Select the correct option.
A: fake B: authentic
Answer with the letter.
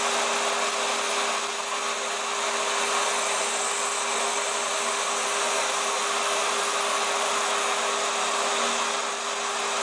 B